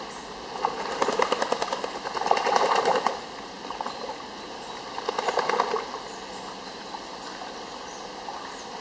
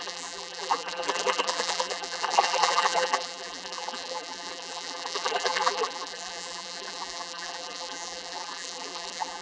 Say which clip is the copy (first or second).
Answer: second